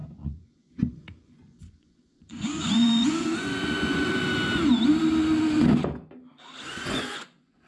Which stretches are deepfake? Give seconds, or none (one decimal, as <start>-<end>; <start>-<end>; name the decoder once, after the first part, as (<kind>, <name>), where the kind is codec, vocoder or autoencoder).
0.0-4.2 (vocoder, Vocos); 6.7-7.7